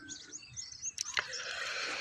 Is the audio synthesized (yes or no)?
no